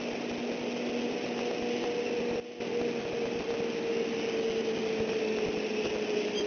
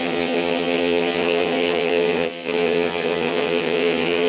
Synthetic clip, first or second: second